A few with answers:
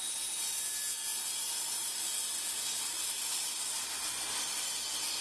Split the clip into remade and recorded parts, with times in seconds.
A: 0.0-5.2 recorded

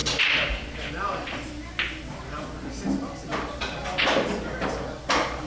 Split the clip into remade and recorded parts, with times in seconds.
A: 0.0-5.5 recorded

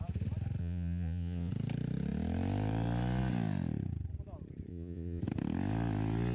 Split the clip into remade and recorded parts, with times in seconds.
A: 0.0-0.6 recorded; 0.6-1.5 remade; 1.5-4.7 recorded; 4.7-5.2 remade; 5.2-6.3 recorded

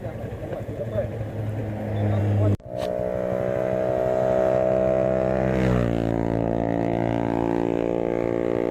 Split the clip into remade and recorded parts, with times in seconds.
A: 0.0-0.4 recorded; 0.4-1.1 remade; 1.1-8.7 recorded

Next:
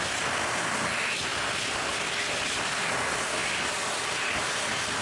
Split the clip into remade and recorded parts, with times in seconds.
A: 0.0-5.0 recorded

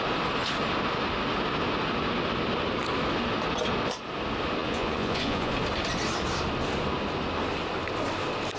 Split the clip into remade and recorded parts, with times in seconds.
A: 0.0-4.6 recorded; 4.6-5.5 remade; 5.5-8.6 recorded